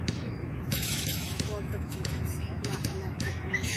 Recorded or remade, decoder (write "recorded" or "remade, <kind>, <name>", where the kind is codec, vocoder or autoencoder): remade, autoencoder, DAC-VAE